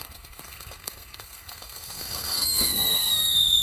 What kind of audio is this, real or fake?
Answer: fake